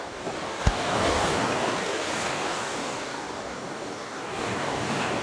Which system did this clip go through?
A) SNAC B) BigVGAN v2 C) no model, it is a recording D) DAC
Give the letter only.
D